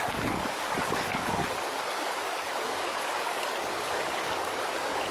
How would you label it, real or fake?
fake